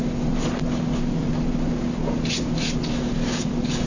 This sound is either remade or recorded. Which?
recorded